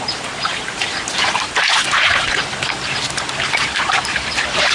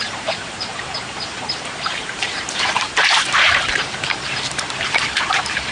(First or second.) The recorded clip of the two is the first